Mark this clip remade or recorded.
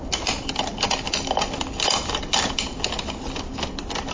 recorded